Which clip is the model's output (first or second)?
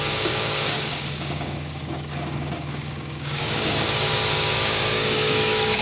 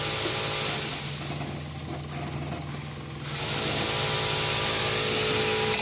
first